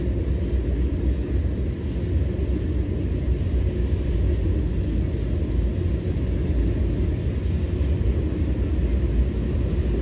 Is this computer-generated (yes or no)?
no